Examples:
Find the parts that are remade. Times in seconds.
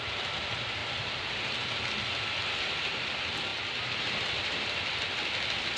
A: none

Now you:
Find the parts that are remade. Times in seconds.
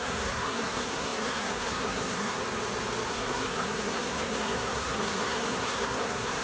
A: 0.0-2.4 (codec, SNAC); 3.1-6.4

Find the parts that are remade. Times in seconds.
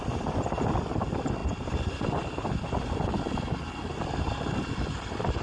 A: none